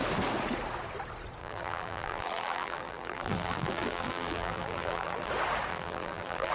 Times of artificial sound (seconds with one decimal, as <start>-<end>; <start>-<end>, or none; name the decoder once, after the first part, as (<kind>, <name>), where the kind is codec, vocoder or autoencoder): 1.4-5.3 (vocoder, BigVGAN v2); 5.7-6.5